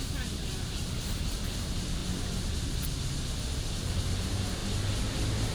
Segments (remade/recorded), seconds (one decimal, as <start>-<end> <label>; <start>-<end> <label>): 0.0-2.0 remade; 2.0-4.0 recorded; 4.0-4.6 remade; 4.6-5.5 recorded